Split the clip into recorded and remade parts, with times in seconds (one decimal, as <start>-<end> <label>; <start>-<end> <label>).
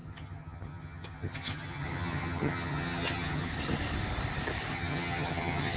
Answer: 0.0-3.5 remade; 3.5-4.7 recorded; 4.7-5.8 remade